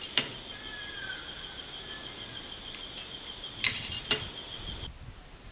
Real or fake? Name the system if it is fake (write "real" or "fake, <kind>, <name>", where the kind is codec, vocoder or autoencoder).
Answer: real